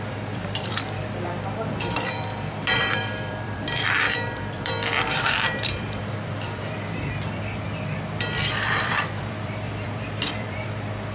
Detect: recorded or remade remade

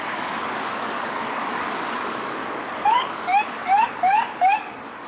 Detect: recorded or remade remade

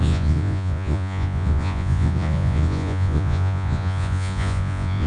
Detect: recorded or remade remade